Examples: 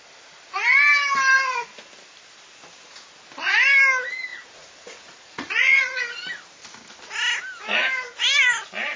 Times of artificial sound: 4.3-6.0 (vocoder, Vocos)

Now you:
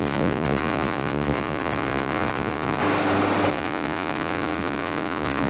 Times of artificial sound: 0.0-2.8 (vocoder, Vocos); 3.5-5.5

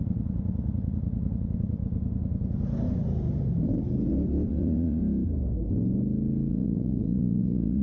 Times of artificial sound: 0.0-1.8 (vocoder, Vocos); 4.5-5.0; 6.5-7.8

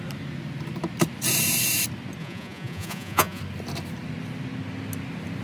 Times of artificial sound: 2.2-3.4 (vocoder, Vocos)

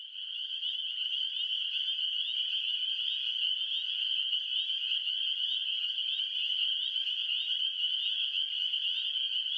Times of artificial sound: none

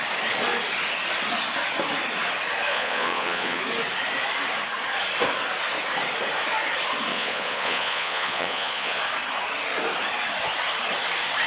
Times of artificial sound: 2.7-3.6 (vocoder, Vocos); 7.1-9.0

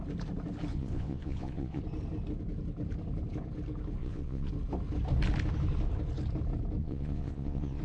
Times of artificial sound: 0.7-1.8 (vocoder, Vocos); 4.0-4.5; 6.8-7.8

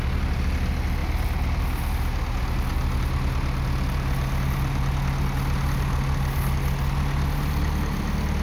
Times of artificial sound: none